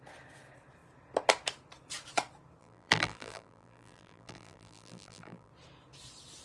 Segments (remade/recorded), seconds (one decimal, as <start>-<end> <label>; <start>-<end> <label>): 0.0-2.6 recorded; 2.6-5.5 remade; 5.5-6.4 recorded